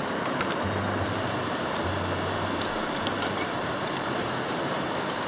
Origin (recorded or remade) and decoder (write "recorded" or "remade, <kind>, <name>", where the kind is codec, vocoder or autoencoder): remade, vocoder, BigVGAN v2